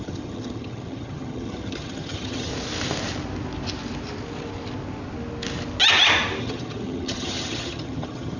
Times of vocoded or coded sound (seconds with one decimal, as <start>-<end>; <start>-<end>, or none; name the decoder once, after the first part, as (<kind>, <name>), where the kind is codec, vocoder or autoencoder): 0.0-2.5 (vocoder, HiFi-GAN); 6.4-8.4